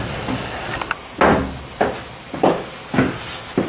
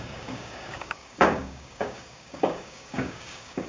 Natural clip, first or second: first